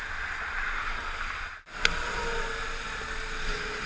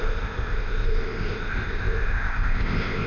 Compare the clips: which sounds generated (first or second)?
second